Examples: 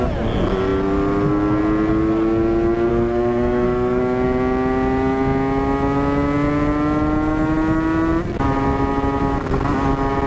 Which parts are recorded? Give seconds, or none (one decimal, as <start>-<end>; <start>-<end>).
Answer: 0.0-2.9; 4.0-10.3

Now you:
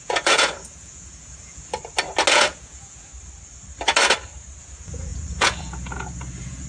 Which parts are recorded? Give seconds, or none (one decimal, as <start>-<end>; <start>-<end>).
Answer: 1.7-2.3; 3.1-4.6

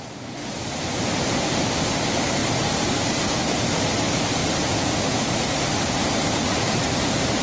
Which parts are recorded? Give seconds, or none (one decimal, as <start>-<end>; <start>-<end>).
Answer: none

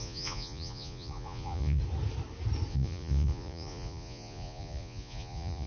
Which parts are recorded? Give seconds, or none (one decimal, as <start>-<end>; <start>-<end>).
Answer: 1.8-2.7

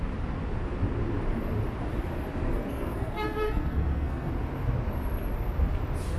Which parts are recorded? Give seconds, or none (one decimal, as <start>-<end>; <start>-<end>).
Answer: 0.0-2.5; 4.3-6.2

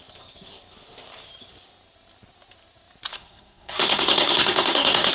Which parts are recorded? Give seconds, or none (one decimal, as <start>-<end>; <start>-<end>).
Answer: 0.0-3.1

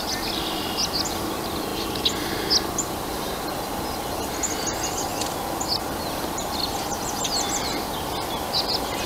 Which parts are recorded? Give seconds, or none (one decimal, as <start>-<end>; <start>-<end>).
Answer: 0.0-9.1